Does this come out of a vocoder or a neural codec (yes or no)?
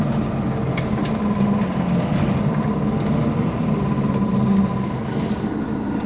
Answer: no